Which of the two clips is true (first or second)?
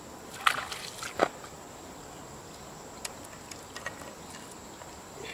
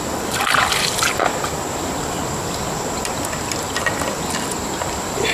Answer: first